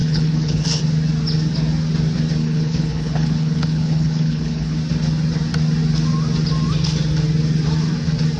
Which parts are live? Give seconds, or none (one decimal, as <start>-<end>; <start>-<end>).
0.8-2.4; 4.8-8.4